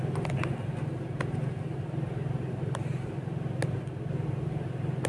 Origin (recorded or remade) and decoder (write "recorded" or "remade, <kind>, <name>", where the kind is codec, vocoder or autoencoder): recorded